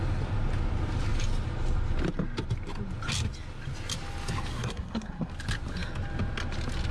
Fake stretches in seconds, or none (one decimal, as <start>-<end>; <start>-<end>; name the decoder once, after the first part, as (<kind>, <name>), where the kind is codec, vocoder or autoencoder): 4.5-5.3 (codec, SNAC)